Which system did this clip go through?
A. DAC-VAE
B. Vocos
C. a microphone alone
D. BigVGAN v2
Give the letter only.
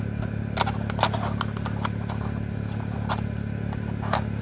C